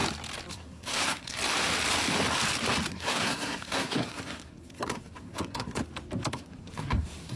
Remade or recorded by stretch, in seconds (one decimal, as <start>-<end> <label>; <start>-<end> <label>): 0.0-0.5 recorded; 0.5-1.4 remade; 1.4-2.9 recorded; 2.9-5.8 remade; 5.8-6.3 recorded; 6.3-7.4 remade